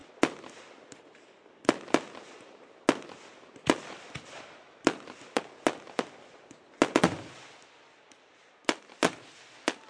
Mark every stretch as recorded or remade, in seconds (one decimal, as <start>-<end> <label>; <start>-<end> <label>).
0.0-9.9 recorded